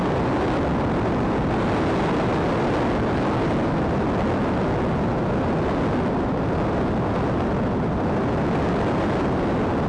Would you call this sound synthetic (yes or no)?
no